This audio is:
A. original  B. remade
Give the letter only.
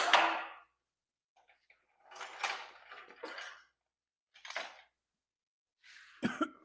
A